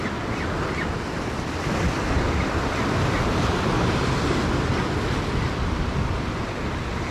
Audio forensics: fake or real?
real